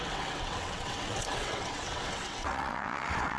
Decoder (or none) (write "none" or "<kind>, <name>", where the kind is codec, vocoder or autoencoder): vocoder, WaveNeXt